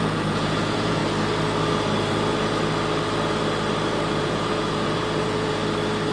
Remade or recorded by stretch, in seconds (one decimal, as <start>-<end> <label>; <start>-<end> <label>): 0.0-1.0 remade; 1.0-4.1 recorded; 4.1-5.6 remade; 5.6-6.1 recorded